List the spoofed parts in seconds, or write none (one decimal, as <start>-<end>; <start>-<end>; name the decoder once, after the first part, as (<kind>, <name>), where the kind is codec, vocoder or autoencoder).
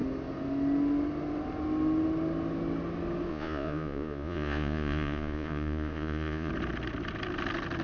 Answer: 3.3-6.5 (vocoder, Vocos)